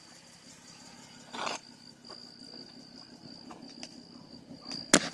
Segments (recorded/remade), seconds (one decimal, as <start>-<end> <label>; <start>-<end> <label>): 0.0-5.1 recorded

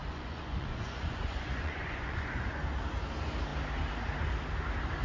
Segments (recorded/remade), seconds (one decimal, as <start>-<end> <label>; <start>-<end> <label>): 0.0-2.6 remade; 2.6-5.0 recorded

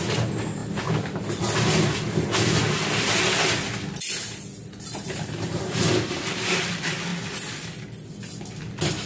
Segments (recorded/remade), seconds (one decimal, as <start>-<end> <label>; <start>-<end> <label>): 0.0-4.6 recorded; 4.6-5.9 remade; 5.9-9.1 recorded